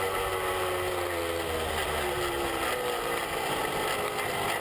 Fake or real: real